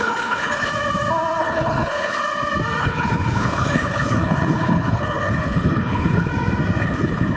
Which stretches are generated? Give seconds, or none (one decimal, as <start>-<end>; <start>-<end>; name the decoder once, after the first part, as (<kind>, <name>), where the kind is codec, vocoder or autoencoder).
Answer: 0.0-0.7 (codec, HILCodec); 1.4-2.2; 2.8-6.3; 6.8-7.4